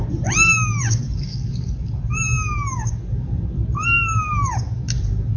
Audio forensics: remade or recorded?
remade